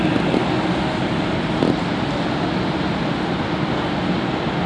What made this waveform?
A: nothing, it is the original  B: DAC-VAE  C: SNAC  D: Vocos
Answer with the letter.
A